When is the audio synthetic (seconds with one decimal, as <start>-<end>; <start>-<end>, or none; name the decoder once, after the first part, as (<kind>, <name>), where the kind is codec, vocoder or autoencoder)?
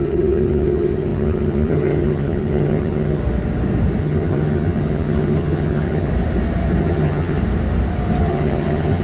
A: 0.0-3.2 (vocoder, HiFi-GAN); 4.0-6.1; 6.8-7.4; 8.2-9.0